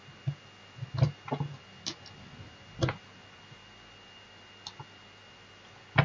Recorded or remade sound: recorded